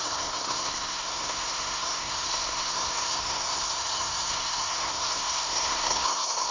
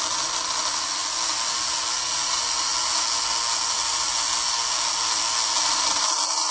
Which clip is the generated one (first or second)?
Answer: first